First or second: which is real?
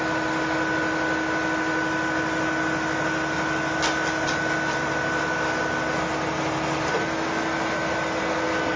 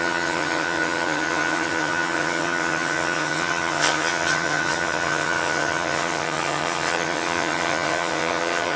first